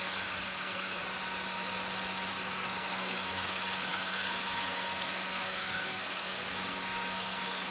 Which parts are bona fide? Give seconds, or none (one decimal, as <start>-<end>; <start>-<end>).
1.0-2.3